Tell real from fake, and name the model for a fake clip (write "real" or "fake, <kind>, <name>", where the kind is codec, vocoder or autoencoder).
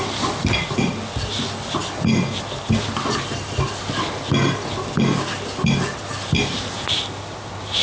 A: real